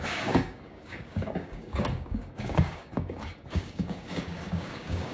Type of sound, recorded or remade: remade